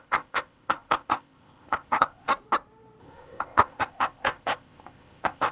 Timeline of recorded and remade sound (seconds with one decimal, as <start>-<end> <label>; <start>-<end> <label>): 0.0-2.3 remade; 2.3-3.0 recorded; 3.0-5.5 remade